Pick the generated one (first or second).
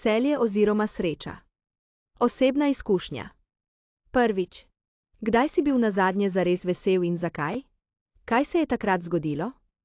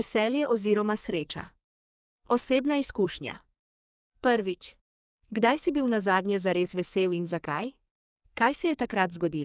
second